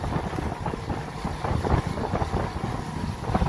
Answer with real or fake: real